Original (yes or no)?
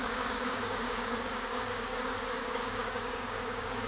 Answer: no